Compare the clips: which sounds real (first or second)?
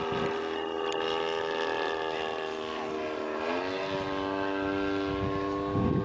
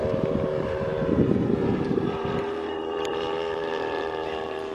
first